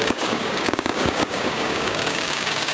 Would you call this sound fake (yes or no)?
yes